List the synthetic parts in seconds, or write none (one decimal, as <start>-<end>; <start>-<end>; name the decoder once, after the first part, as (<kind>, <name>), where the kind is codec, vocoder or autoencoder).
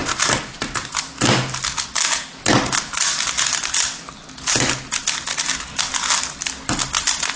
none